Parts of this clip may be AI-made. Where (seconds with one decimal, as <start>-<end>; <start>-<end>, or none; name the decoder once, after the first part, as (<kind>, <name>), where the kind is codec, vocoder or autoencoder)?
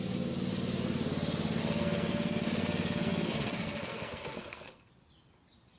1.6-4.9 (codec, SNAC)